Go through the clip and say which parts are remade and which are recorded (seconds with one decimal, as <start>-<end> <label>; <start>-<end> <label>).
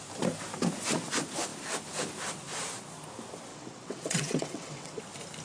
0.0-3.5 recorded; 3.5-5.0 remade; 5.0-5.4 recorded